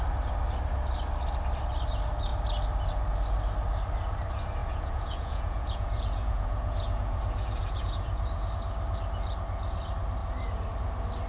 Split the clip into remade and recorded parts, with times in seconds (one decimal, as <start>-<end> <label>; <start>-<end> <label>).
0.0-4.6 recorded; 4.6-8.5 remade; 8.5-11.3 recorded